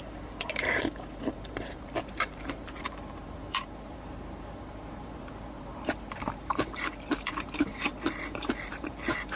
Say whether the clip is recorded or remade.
remade